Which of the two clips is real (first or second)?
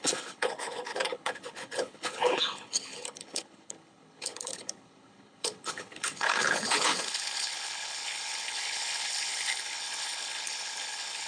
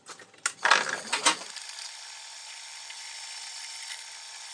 second